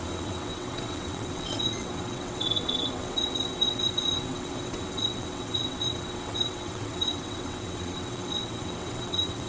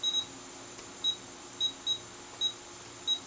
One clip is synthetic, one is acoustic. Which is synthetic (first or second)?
first